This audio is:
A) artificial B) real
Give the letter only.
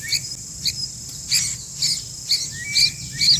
B